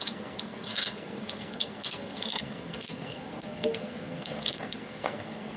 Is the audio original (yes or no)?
no